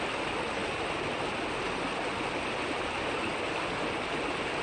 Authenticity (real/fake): real